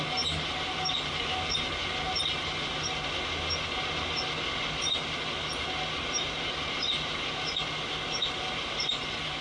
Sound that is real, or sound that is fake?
real